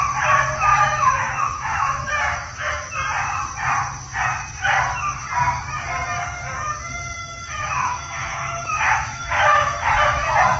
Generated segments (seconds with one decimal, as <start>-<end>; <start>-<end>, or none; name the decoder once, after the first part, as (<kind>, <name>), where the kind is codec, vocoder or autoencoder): 0.7-2.9 (autoencoder, DAC-VAE); 7.2-9.9